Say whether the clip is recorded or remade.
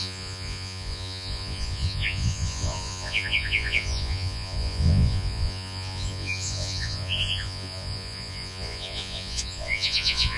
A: remade